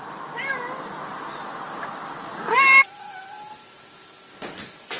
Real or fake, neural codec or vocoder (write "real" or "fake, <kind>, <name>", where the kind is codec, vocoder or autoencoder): real